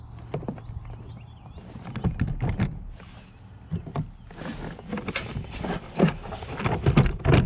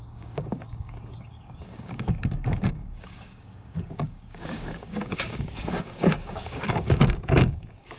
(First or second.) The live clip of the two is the first